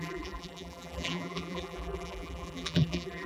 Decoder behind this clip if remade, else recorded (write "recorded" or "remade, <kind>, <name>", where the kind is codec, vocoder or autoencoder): remade, vocoder, BigVGAN v2